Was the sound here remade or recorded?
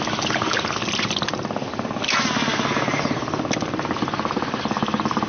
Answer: recorded